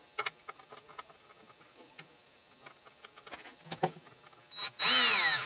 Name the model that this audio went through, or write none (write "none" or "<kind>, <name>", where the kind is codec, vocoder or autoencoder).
none